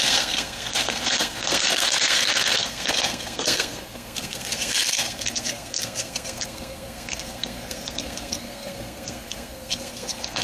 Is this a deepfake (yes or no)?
yes